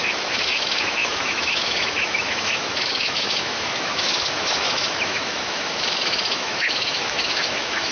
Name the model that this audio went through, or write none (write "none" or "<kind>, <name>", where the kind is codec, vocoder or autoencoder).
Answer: autoencoder, DAC-VAE